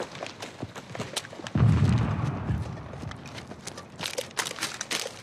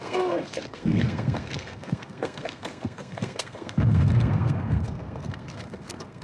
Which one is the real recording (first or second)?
first